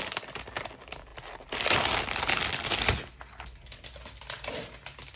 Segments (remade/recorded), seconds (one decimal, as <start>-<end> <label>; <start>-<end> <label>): 0.0-5.2 recorded